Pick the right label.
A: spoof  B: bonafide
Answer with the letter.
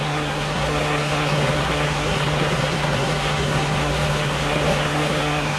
A